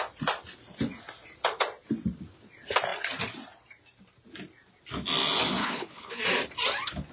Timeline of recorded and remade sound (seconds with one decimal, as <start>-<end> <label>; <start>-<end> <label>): 0.0-5.6 recorded; 5.6-6.2 remade; 6.2-7.1 recorded